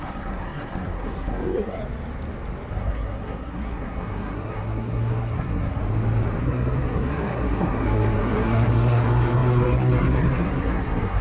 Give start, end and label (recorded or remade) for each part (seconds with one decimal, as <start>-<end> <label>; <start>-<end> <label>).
0.0-1.8 remade; 1.8-2.7 recorded; 2.7-5.8 remade; 5.8-6.4 recorded; 6.4-11.2 remade